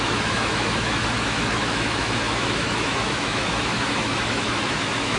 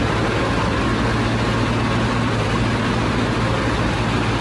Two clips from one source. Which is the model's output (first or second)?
first